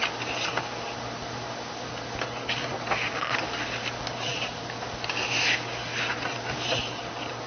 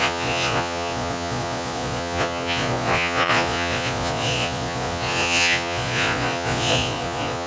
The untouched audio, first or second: first